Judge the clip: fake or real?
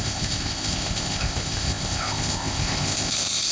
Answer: fake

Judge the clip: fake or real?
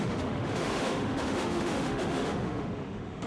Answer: fake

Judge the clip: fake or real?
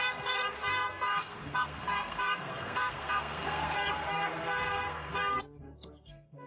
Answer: fake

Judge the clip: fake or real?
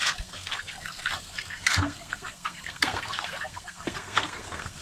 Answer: fake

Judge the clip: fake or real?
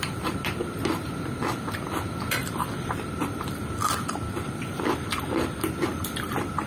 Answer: fake